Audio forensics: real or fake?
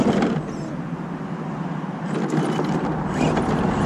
real